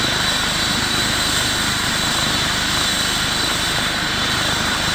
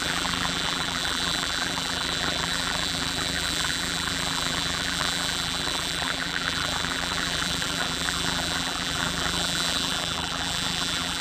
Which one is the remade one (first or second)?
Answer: second